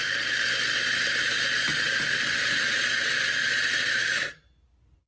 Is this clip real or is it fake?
real